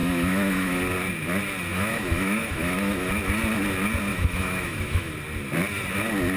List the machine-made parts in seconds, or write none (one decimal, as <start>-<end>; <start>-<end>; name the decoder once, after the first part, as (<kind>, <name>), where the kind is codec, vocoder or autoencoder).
0.0-0.8 (autoencoder, DAC-VAE); 1.7-3.1; 4.1-5.1